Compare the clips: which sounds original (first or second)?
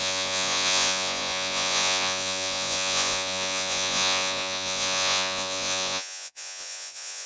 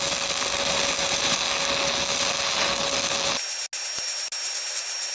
second